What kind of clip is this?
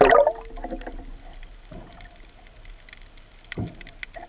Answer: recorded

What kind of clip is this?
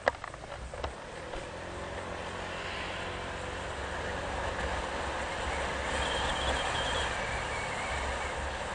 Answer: recorded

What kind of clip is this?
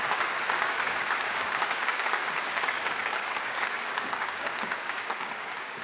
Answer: remade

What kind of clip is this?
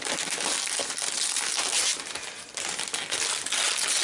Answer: recorded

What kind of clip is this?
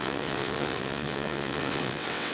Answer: remade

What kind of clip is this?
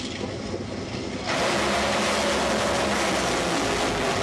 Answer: recorded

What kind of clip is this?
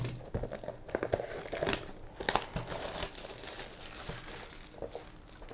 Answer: recorded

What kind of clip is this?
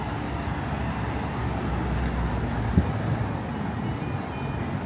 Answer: recorded